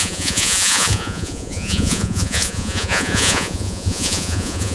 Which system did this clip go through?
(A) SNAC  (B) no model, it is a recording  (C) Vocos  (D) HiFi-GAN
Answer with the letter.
C